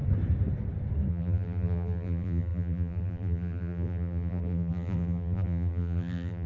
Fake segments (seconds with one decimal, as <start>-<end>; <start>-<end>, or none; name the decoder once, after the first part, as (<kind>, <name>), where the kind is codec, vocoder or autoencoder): 1.1-6.5 (vocoder, BigVGAN v2)